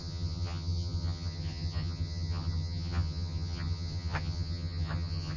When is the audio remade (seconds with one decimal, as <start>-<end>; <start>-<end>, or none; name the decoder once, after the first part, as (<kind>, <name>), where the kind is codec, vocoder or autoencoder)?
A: 0.0-5.4 (vocoder, HiFi-GAN)